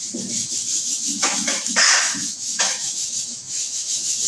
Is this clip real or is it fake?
fake